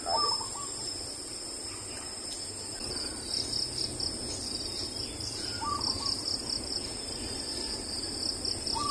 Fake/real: real